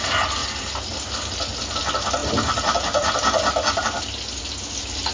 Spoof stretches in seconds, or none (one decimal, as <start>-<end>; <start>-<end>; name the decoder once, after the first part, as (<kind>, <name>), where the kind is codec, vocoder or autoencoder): 0.4-1.3 (vocoder, BigVGAN v2)